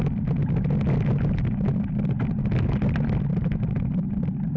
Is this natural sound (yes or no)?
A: yes